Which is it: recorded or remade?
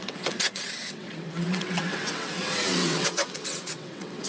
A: remade